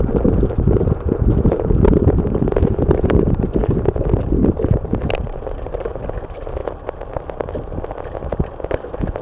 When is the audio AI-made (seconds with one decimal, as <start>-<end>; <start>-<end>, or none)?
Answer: none

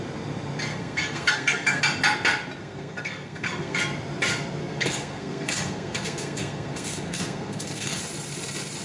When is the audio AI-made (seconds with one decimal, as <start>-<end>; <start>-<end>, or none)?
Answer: 0.7-1.8; 2.6-3.8; 4.6-8.0

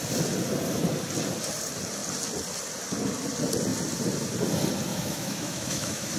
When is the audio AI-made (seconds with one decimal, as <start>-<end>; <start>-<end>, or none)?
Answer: 4.9-6.2

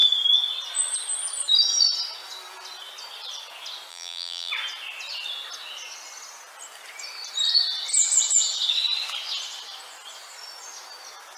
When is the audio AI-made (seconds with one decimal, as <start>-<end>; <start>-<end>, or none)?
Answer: 3.9-4.5

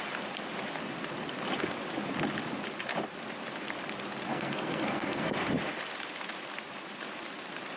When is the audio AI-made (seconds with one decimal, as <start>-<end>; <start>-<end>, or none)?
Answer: 4.3-5.3

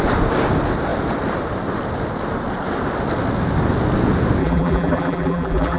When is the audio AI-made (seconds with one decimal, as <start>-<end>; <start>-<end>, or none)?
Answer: 4.4-5.8

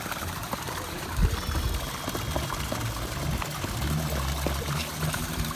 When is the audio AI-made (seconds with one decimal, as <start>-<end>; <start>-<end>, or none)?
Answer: 0.0-1.2; 4.6-5.6